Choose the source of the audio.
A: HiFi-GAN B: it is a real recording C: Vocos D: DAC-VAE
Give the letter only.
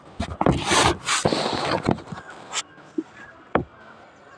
B